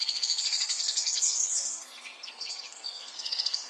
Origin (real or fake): fake